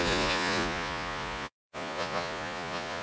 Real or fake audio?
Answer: fake